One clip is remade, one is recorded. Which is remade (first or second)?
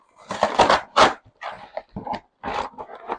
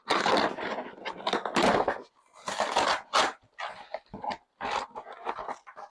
first